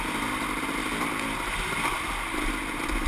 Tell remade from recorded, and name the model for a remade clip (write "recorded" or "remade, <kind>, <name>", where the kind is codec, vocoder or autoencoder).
recorded